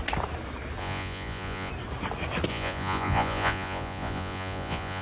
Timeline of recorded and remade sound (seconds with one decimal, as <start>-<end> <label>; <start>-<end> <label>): 0.0-0.8 recorded; 0.8-1.7 remade; 1.7-2.5 recorded; 2.5-5.0 remade